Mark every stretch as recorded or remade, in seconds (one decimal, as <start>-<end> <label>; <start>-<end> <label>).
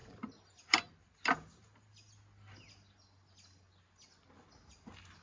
0.0-5.2 recorded